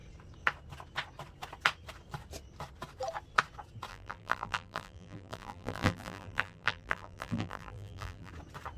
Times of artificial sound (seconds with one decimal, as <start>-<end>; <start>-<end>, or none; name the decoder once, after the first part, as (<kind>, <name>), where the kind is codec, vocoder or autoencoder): 3.9-8.3 (vocoder, BigVGAN v2)